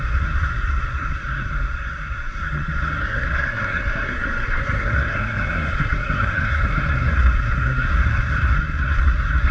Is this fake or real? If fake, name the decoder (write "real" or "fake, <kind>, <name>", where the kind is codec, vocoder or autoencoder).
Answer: fake, codec, SNAC